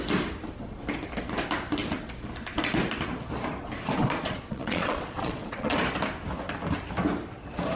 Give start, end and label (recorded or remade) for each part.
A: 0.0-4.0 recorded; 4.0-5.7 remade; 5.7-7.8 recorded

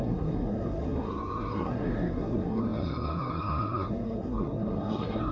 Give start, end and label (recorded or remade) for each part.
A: 0.0-5.3 remade

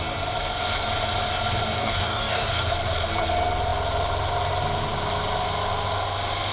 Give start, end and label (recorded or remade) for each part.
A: 0.0-1.8 recorded; 1.8-2.6 remade; 2.6-6.5 recorded

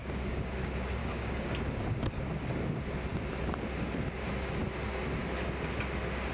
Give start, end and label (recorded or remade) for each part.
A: 0.0-0.5 remade; 0.5-1.0 recorded; 1.0-1.6 remade; 1.6-6.3 recorded

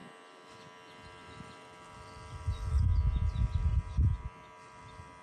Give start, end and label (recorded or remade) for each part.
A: 0.0-3.1 remade; 3.1-3.7 recorded; 3.7-4.8 remade; 4.8-5.2 recorded

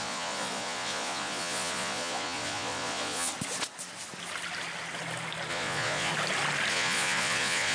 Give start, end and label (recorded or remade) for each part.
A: 0.0-3.3 remade; 3.3-5.5 recorded; 5.5-6.1 remade; 6.1-6.7 recorded; 6.7-7.7 remade

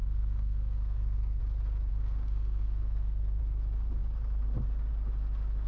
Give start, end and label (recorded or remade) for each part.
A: 0.0-1.4 remade; 1.4-1.9 recorded; 1.9-3.4 remade; 3.4-5.7 recorded

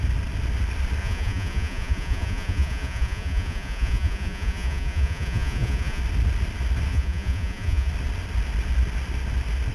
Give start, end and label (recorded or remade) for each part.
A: 0.0-1.0 recorded; 1.0-6.0 remade; 6.0-6.9 recorded; 6.9-7.9 remade; 7.9-9.7 recorded